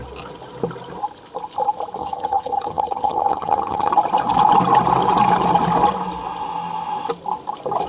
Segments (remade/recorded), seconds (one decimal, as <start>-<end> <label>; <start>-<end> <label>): 0.0-2.0 recorded; 2.0-3.9 remade; 3.9-7.9 recorded